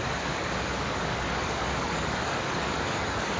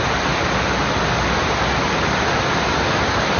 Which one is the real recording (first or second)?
second